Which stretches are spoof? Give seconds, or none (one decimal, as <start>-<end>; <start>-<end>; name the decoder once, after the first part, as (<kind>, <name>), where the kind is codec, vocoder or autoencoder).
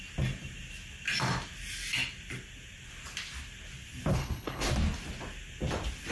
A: 4.1-4.7 (codec, HILCodec)